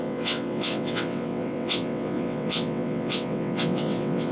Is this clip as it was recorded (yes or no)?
no